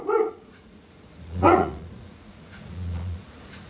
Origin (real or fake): fake